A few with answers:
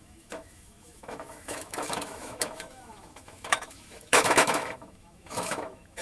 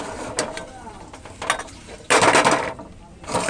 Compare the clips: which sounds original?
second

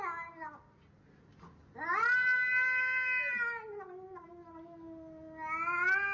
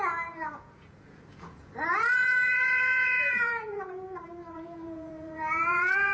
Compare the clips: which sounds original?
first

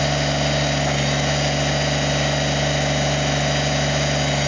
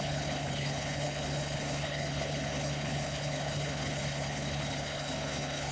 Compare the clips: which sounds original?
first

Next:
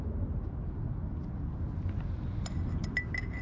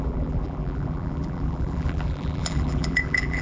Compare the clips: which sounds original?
first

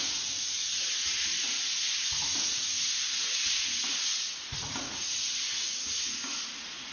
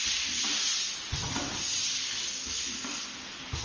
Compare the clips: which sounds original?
second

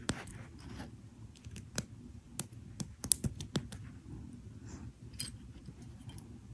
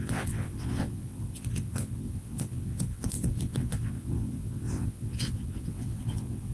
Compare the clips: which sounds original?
first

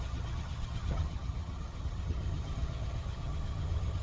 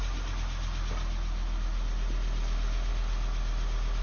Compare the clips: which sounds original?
second